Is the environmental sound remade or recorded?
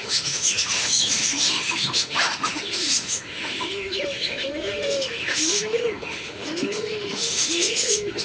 remade